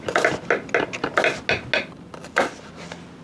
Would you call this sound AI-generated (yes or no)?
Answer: no